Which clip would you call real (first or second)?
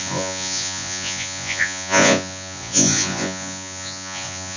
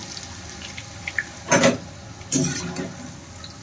second